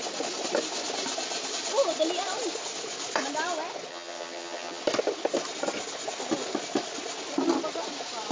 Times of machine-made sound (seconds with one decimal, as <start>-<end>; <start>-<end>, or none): 3.9-4.8